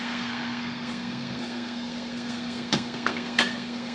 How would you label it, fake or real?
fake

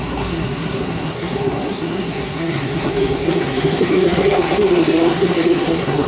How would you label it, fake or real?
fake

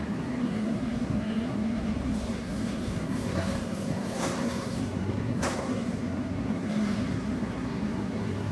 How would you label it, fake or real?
fake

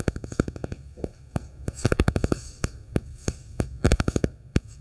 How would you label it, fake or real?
fake